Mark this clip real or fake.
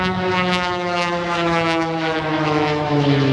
fake